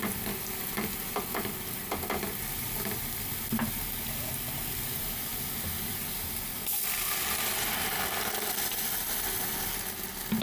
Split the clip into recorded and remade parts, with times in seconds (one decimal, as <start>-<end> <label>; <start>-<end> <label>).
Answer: 0.0-10.4 recorded

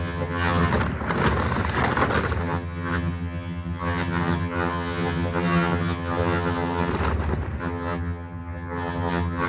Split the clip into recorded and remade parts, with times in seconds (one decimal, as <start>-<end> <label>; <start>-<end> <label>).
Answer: 0.0-0.7 remade; 0.7-2.4 recorded; 2.4-6.9 remade; 6.9-7.6 recorded; 7.6-9.5 remade

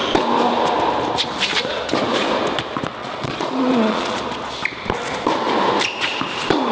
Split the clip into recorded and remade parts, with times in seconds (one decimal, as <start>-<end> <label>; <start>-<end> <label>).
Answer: 0.0-3.0 recorded; 3.0-4.2 remade; 4.2-6.7 recorded

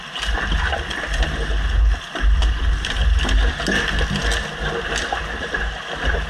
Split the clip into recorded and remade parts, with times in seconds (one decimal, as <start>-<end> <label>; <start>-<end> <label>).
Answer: 0.0-6.3 recorded

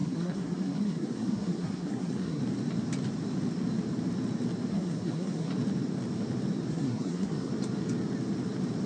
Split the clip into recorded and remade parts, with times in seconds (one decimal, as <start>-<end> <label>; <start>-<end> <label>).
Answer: 0.0-2.4 remade; 2.4-4.7 recorded; 4.7-5.5 remade; 5.5-6.7 recorded; 6.7-7.5 remade; 7.5-8.9 recorded

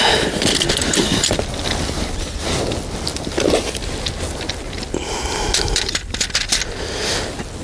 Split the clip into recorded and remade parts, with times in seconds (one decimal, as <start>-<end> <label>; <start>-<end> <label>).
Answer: 0.0-7.6 recorded

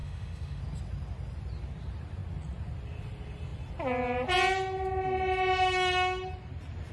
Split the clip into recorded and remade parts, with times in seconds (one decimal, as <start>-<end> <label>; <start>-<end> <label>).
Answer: 0.0-0.6 remade; 0.6-6.9 recorded

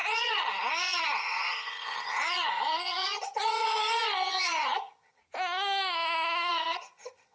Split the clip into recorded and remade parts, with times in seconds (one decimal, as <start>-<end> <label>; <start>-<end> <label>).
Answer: 0.0-5.2 remade; 5.2-6.5 recorded; 6.5-7.3 remade